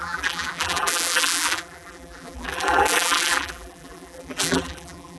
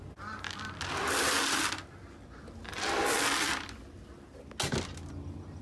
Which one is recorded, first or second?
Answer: second